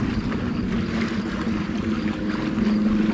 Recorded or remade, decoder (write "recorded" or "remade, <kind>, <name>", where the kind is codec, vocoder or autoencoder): recorded